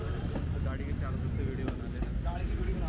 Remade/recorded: recorded